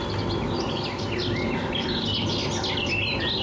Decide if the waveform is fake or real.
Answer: real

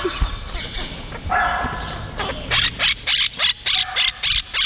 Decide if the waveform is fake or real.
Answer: real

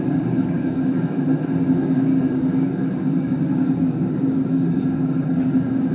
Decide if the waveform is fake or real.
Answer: fake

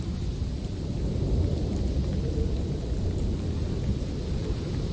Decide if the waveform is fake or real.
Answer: real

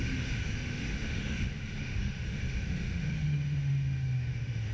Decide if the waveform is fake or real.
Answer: fake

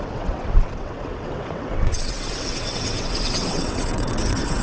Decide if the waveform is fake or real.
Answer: fake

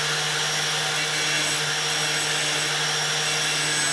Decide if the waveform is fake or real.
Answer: real